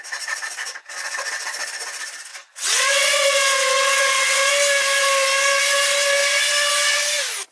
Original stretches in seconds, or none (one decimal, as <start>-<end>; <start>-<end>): 0.0-0.7; 1.5-2.3; 4.5-7.5